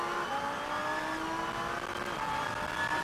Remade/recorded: recorded